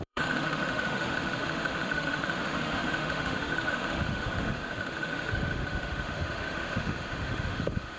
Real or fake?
fake